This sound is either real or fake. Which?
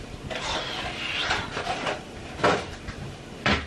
real